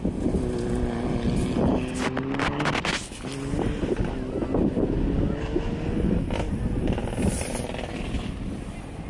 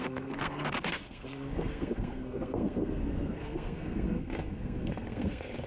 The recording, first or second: first